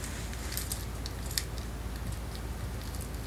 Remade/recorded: recorded